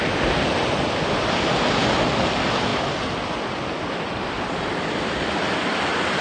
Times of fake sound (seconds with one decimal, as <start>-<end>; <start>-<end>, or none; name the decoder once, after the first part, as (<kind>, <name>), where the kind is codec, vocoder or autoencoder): none